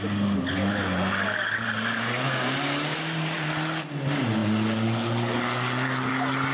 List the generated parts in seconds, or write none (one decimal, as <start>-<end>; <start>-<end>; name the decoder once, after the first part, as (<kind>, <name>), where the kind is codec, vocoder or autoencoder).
none